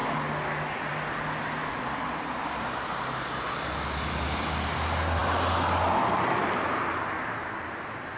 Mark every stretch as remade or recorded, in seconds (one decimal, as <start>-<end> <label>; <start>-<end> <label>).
0.0-8.2 recorded